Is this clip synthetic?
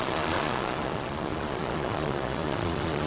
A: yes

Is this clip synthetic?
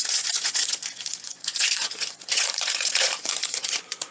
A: yes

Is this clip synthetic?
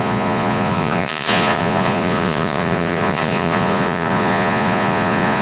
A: yes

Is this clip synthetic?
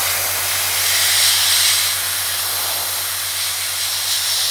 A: no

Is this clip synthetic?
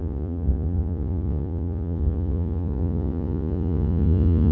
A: yes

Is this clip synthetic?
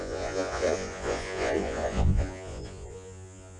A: yes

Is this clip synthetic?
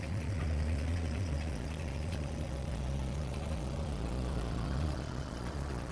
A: yes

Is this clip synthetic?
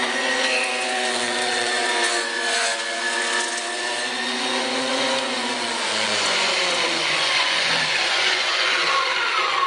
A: yes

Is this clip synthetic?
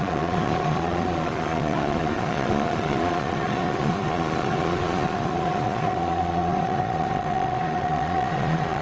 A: yes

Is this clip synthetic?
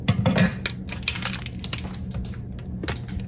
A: no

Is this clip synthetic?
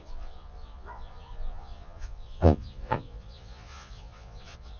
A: yes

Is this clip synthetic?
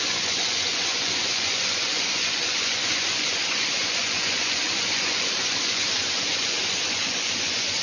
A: yes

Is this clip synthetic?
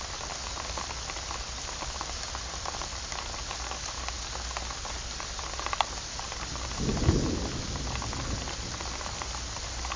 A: no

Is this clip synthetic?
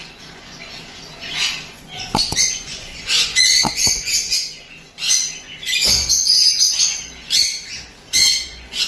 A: yes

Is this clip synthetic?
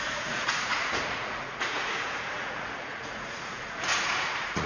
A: yes